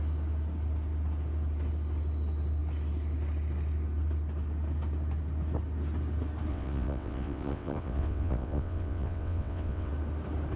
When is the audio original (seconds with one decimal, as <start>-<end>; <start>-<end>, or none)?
0.0-6.5; 9.9-10.6